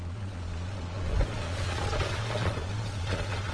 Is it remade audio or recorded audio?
remade